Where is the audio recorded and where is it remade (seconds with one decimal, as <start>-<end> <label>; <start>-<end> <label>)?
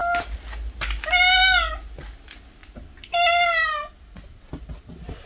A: 0.0-5.3 recorded